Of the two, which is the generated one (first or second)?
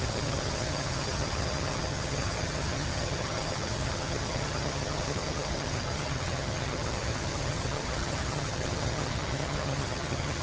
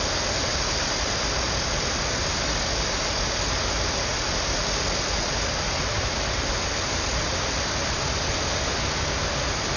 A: first